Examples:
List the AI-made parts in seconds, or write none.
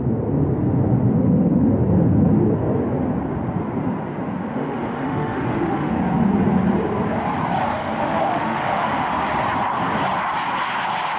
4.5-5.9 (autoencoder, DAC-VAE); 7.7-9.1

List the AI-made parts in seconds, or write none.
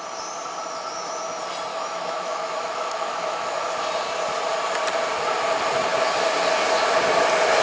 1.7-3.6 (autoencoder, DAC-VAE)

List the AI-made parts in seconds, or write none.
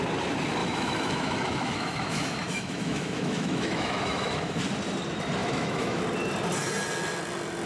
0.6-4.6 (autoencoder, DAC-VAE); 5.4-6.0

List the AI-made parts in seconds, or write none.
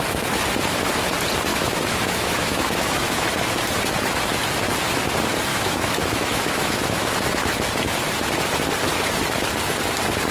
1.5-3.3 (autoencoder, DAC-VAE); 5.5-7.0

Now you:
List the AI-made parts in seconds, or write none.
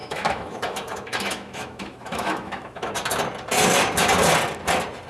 0.0-2.9 (autoencoder, DAC-VAE)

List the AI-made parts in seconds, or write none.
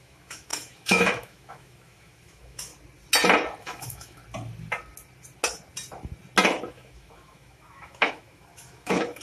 0.0-2.7 (autoencoder, DAC-VAE); 3.6-4.2; 6.7-9.2